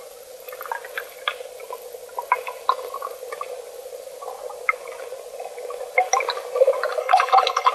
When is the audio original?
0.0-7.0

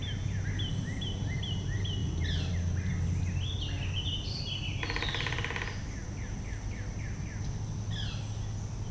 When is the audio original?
0.0-8.9

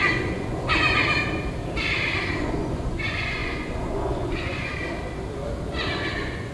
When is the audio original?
1.0-2.4; 4.7-5.7

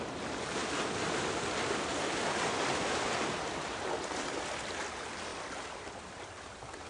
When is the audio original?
0.0-6.9

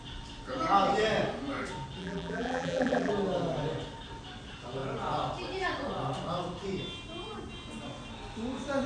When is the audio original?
0.0-2.0; 3.1-8.9

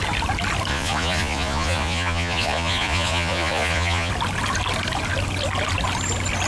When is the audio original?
0.0-0.7; 4.1-6.5

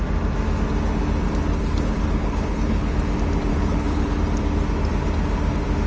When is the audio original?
0.0-1.5; 3.0-3.5; 4.2-5.9

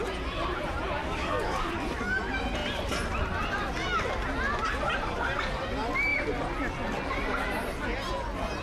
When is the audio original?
0.0-1.0; 1.7-8.6